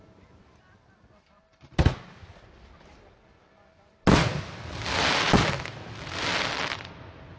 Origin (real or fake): real